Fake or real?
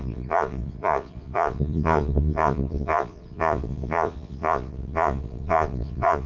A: fake